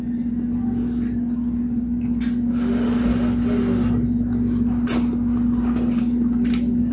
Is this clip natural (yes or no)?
yes